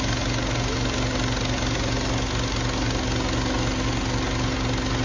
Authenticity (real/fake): real